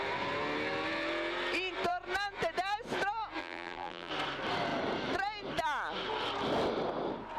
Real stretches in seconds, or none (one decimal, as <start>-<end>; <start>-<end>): 0.0-3.4; 4.1-7.4